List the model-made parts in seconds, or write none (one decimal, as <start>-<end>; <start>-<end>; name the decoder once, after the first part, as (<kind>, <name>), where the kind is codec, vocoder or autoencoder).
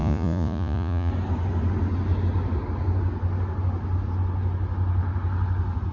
0.0-1.1 (vocoder, Vocos)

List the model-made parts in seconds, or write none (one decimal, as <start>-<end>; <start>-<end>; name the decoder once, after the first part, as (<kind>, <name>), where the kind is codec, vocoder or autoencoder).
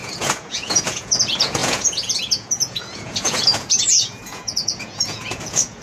0.0-5.8 (vocoder, Vocos)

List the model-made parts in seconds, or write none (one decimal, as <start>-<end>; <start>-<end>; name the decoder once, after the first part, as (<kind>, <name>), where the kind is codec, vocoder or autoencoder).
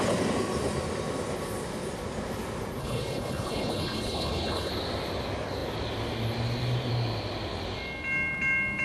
2.8-4.7 (codec, HILCodec)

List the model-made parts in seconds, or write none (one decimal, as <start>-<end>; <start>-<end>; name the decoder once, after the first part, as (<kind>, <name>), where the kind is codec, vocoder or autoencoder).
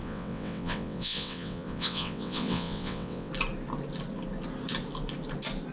0.0-3.3 (vocoder, WaveNeXt)